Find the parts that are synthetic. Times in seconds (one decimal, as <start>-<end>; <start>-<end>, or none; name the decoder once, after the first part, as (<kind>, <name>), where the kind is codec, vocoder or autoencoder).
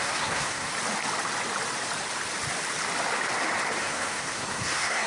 0.0-0.7 (codec, SNAC); 3.8-5.1